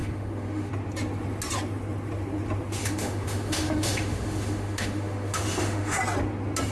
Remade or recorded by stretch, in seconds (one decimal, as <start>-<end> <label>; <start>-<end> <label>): 0.0-0.7 remade; 0.7-2.8 recorded; 2.8-6.0 remade; 6.0-6.7 recorded